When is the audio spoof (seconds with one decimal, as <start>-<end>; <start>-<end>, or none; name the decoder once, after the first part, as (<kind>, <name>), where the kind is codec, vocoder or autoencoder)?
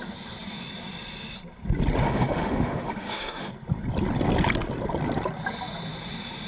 2.0-3.5 (autoencoder, DAC-VAE)